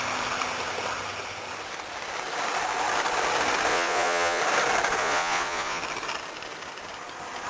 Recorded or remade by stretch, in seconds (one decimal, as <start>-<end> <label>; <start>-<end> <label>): 0.0-3.7 recorded; 3.7-4.4 remade; 4.4-5.0 recorded; 5.0-5.8 remade; 5.8-7.5 recorded